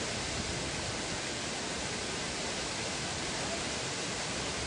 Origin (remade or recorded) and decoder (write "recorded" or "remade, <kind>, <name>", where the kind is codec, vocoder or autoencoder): recorded